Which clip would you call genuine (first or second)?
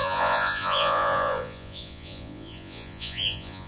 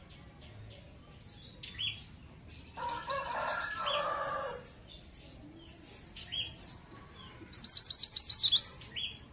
second